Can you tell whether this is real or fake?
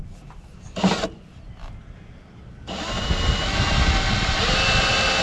real